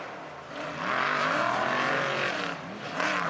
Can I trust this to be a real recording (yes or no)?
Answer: yes